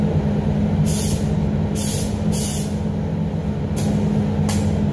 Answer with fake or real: real